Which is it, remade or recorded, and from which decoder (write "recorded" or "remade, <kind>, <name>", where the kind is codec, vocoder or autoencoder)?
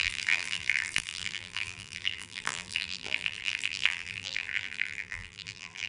remade, vocoder, BigVGAN v2